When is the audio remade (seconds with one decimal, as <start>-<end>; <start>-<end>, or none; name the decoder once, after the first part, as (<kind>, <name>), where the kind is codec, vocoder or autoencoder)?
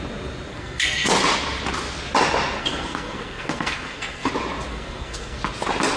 0.5-1.1 (codec, SNAC); 2.6-4.3; 4.7-5.4